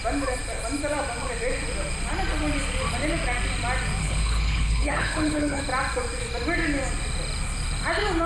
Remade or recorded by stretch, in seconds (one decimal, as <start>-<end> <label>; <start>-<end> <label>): 0.0-4.0 recorded; 4.0-5.6 remade; 5.6-8.3 recorded